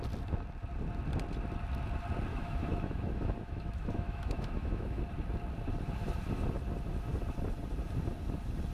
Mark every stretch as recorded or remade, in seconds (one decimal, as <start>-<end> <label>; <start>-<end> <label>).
0.0-2.3 recorded; 2.3-5.0 remade; 5.0-8.7 recorded